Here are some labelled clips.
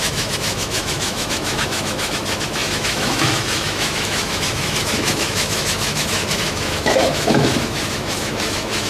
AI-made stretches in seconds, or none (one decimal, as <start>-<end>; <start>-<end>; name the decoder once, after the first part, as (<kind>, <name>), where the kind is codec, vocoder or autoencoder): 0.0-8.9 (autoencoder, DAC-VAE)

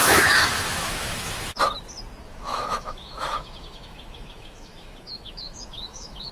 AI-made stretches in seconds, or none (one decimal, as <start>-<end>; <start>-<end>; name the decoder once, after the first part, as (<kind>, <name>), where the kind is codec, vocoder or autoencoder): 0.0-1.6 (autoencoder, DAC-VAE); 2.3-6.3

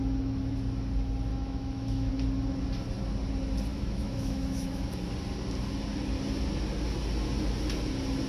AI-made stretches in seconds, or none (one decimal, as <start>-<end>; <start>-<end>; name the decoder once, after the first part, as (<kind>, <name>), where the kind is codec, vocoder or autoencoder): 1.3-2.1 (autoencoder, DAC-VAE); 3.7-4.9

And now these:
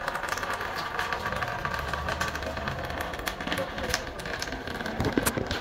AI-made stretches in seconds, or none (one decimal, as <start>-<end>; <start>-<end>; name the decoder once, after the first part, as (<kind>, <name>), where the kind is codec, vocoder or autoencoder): none

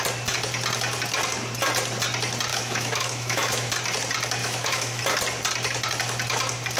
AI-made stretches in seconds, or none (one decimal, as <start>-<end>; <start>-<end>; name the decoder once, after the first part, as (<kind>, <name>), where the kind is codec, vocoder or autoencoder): 2.5-3.7 (autoencoder, DAC-VAE); 4.4-5.0

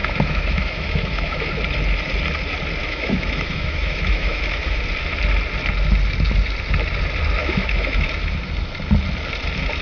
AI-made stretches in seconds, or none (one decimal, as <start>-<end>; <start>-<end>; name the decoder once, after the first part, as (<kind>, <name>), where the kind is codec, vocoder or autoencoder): 0.0-1.6 (autoencoder, DAC-VAE); 2.8-4.8; 7.4-8.1

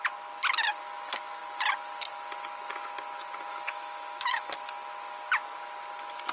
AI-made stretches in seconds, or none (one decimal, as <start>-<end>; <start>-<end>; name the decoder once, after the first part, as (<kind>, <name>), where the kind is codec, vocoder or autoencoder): 3.5-4.5 (autoencoder, DAC-VAE)

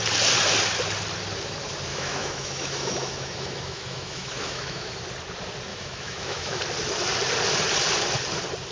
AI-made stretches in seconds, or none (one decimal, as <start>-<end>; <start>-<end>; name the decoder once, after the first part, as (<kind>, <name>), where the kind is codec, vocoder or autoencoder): 1.9-4.9 (autoencoder, DAC-VAE); 5.7-6.6